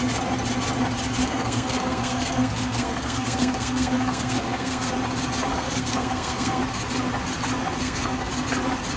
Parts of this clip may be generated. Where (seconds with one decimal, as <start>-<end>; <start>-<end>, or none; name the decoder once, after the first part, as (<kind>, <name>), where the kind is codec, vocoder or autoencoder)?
1.2-4.9 (codec, SNAC); 5.5-6.6; 7.8-8.3